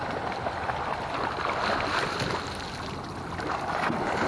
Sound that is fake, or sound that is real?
real